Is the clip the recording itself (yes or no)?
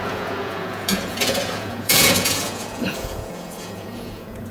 no